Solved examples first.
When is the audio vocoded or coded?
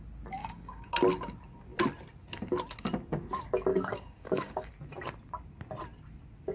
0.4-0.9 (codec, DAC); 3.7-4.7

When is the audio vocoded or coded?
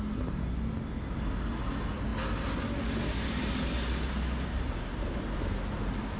none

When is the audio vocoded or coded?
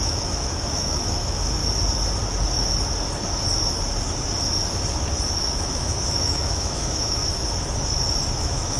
0.0-1.6 (autoencoder, DAC-VAE); 5.4-7.2; 8.4-8.8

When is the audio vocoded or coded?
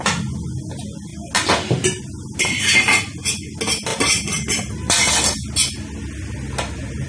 3.9-5.1 (vocoder, BigVGAN v2)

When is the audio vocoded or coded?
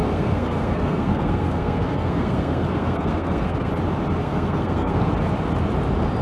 0.0-3.7 (codec, SNAC); 4.2-5.1